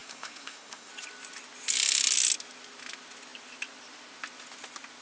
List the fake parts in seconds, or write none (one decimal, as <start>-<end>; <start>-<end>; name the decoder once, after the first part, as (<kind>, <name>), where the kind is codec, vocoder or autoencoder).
0.0-0.9 (codec, SNAC)